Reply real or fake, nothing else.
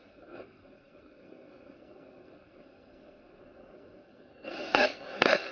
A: fake